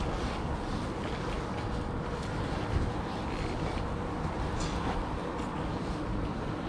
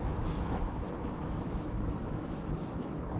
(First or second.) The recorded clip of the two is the first